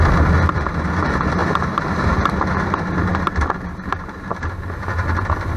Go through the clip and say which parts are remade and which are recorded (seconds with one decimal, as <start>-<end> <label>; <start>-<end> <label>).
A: 0.0-5.6 recorded